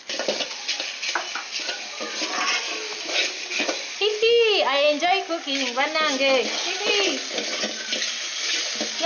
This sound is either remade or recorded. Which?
recorded